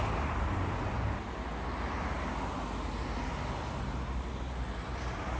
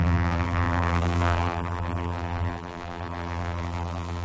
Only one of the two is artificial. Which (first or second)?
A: second